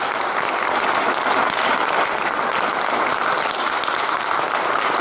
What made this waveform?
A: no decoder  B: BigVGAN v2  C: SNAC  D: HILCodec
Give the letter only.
A